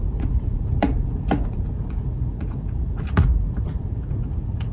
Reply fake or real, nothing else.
fake